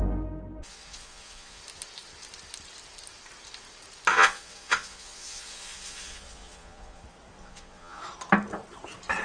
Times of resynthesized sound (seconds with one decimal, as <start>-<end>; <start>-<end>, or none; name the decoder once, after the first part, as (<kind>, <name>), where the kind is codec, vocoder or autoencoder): 0.6-1.6 (vocoder, Vocos); 4.1-7.0; 7.4-8.0